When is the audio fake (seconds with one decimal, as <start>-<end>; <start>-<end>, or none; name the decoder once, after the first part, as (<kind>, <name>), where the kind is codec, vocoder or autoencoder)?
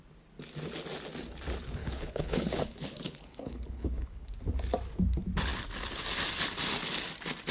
1.8-4.3 (codec, HILCodec)